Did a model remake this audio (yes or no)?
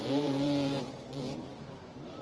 yes